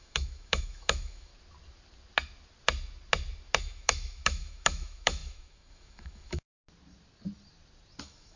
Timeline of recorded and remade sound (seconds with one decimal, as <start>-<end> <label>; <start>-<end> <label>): 0.0-1.3 remade; 1.3-3.6 recorded; 3.6-6.5 remade; 6.5-8.0 recorded; 8.0-8.4 remade

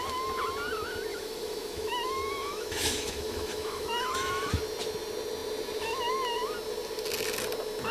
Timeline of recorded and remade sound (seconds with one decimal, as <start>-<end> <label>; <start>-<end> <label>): 0.0-1.1 recorded; 1.1-4.5 remade; 4.5-7.9 recorded

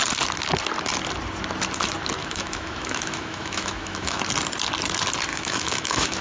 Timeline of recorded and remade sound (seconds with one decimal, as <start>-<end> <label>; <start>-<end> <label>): 0.0-2.2 recorded; 2.2-4.2 remade; 4.2-5.3 recorded; 5.3-6.2 remade

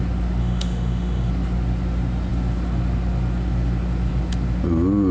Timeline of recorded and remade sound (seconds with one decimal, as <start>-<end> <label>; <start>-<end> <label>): 0.0-0.4 recorded; 0.4-1.3 remade; 1.3-5.1 recorded

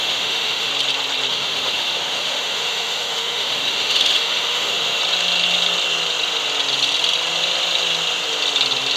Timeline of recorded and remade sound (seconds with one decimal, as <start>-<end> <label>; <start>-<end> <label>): 0.0-0.7 remade; 0.7-1.3 recorded; 1.3-5.0 remade; 5.0-9.0 recorded

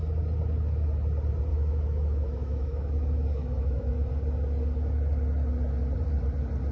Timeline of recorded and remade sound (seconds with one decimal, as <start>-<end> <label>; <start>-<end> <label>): 0.0-1.5 recorded; 1.5-4.1 remade; 4.1-6.7 recorded